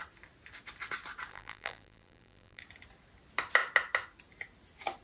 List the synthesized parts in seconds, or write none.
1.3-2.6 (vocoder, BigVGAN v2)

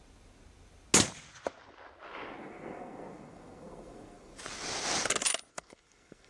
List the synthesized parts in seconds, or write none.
2.4-4.3 (codec, SNAC); 5.5-6.3

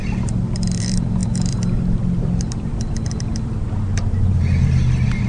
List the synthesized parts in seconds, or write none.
0.0-1.2 (vocoder, BigVGAN v2); 2.2-5.3

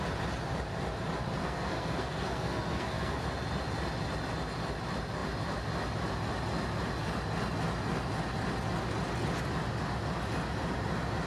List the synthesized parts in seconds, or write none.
1.4-3.2 (codec, SNAC)

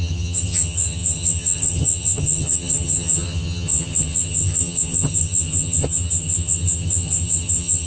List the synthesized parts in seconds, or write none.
0.0-7.9 (vocoder, HiFi-GAN)

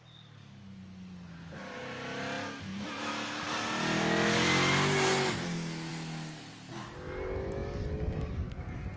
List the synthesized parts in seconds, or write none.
none

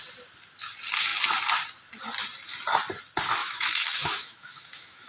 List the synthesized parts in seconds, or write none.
3.4-5.1 (autoencoder, DAC-VAE)